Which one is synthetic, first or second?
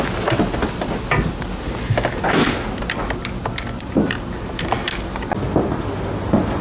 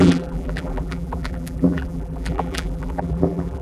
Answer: second